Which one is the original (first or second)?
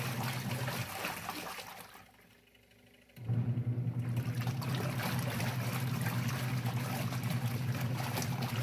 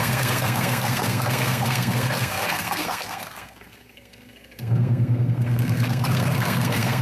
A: first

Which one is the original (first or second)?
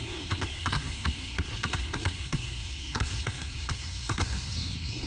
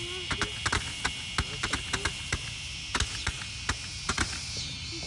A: second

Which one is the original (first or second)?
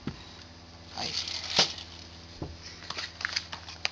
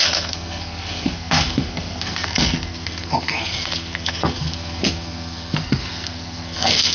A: first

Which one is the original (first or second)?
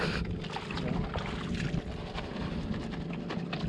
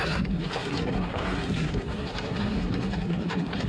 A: first